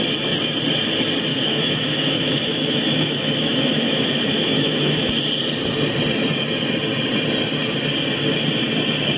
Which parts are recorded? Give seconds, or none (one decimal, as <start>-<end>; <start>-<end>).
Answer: 0.0-1.3; 5.1-9.2